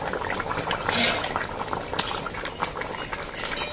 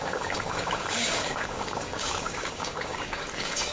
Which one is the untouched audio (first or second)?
first